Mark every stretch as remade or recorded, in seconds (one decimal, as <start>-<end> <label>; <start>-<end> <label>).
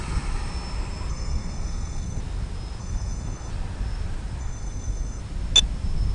0.0-1.1 recorded; 1.1-2.2 remade; 2.2-2.8 recorded; 2.8-3.5 remade; 3.5-4.4 recorded; 4.4-5.2 remade; 5.2-6.1 recorded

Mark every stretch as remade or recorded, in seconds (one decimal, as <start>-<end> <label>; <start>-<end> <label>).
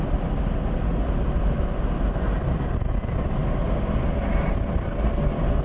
0.0-5.6 recorded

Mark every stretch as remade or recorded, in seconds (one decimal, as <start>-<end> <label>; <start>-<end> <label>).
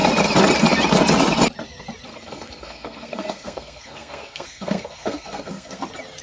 0.0-2.1 recorded; 2.1-5.8 remade; 5.8-6.2 recorded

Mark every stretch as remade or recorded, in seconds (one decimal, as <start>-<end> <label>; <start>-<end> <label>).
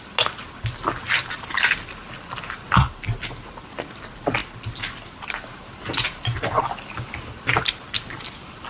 0.0-8.7 recorded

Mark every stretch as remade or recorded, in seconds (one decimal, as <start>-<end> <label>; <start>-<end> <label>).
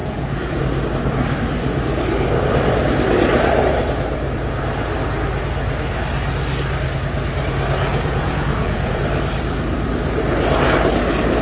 0.0-0.6 remade; 0.6-7.9 recorded; 7.9-9.0 remade; 9.0-11.4 recorded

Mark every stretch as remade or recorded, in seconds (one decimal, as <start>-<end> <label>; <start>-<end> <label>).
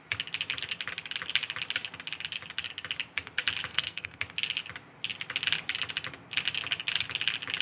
0.0-3.7 recorded; 3.7-4.2 remade; 4.2-7.6 recorded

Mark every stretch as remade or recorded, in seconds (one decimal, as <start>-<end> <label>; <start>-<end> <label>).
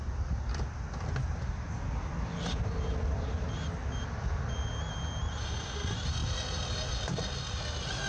0.0-8.1 recorded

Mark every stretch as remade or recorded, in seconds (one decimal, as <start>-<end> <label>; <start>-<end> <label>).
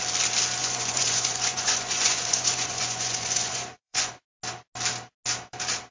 0.0-0.6 recorded; 0.6-4.1 remade; 4.1-5.9 recorded